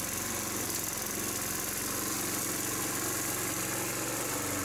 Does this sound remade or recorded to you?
recorded